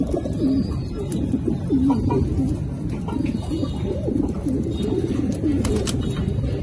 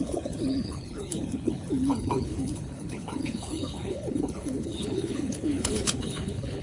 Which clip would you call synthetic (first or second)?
second